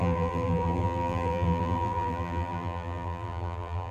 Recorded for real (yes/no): no